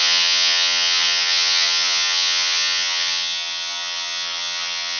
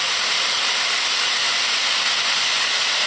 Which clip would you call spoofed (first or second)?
first